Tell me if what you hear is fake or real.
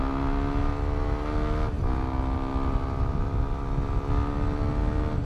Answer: real